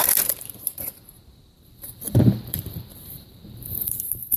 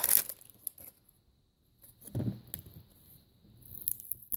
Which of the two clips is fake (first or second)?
first